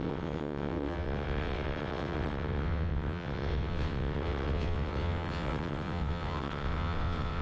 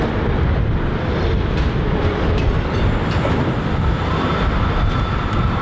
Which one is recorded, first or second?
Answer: second